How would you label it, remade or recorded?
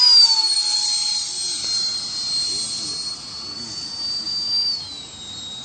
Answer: recorded